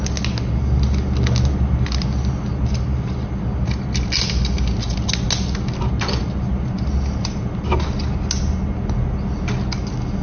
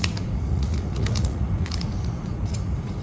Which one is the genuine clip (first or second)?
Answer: first